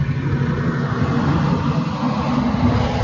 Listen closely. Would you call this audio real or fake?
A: real